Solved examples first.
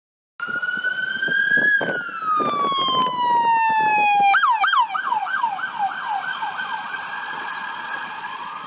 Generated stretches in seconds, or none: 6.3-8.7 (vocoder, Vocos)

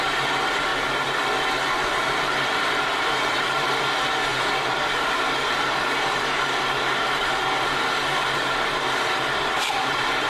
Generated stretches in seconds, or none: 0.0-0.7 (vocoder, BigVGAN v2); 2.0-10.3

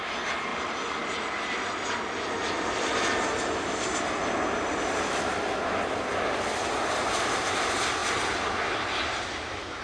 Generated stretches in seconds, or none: none